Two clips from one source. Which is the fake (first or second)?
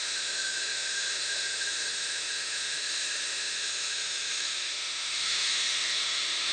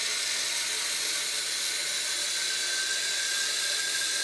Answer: first